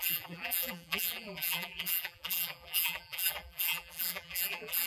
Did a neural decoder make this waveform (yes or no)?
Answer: yes